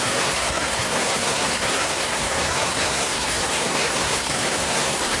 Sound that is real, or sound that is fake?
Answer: fake